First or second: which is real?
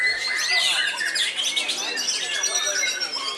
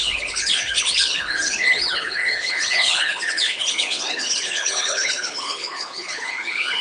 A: first